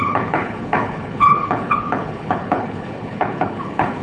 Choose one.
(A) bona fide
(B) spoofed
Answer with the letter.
B